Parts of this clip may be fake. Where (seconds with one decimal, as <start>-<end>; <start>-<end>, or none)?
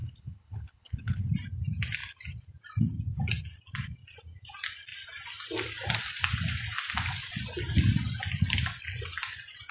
0.0-1.3